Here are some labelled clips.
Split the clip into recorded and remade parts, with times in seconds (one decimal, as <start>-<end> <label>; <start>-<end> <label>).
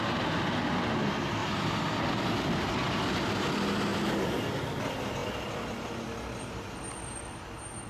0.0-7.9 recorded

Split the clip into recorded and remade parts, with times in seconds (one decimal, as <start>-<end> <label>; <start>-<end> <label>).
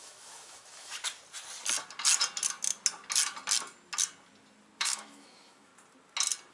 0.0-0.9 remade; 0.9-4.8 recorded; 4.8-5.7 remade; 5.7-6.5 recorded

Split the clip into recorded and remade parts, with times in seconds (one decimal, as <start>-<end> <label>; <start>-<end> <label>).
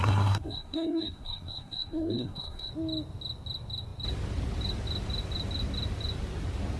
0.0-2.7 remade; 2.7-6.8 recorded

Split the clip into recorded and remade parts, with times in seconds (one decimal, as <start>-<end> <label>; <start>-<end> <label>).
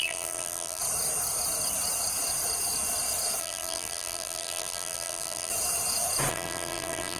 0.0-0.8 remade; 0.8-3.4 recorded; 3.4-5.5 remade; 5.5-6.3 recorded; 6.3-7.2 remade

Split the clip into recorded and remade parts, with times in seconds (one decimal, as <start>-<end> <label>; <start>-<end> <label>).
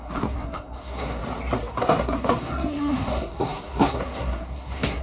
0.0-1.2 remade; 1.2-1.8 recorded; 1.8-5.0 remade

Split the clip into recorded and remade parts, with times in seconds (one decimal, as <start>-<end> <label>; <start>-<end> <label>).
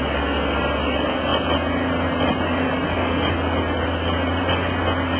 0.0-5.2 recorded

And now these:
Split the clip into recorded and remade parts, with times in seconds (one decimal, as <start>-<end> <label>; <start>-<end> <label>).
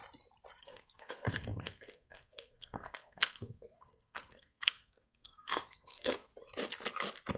0.0-0.6 recorded; 0.6-6.3 remade; 6.3-7.4 recorded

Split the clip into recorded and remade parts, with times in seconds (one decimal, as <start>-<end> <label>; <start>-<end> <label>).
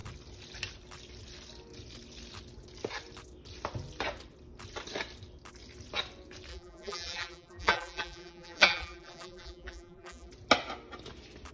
0.0-6.5 recorded; 6.5-10.3 remade; 10.3-11.5 recorded